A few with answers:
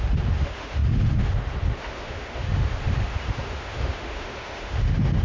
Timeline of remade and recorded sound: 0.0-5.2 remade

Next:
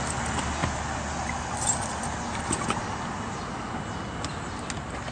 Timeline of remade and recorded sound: 0.0-5.1 recorded

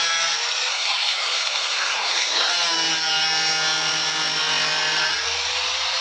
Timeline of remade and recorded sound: 0.0-0.7 recorded; 0.7-2.5 remade; 2.5-6.0 recorded

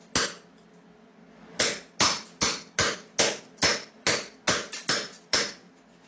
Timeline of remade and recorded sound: 0.0-6.1 recorded